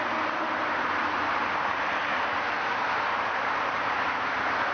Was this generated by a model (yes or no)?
no